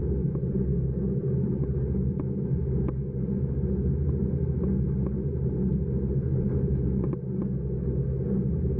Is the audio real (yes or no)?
yes